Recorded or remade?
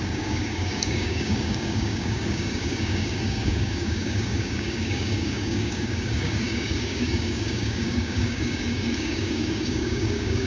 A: remade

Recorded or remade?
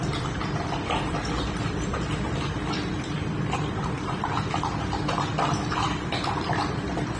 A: remade